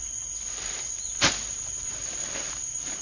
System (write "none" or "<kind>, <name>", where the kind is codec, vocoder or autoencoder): none